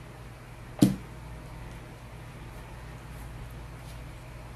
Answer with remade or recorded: recorded